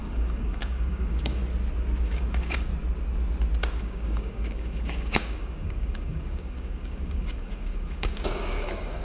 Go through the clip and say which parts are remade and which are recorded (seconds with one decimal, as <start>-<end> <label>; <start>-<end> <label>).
0.0-1.4 remade; 1.4-2.0 recorded; 2.0-2.7 remade; 2.7-3.8 recorded; 3.8-9.0 remade